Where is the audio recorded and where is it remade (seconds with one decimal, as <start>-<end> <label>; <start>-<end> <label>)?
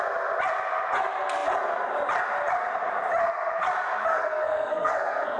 0.0-4.1 recorded; 4.1-5.4 remade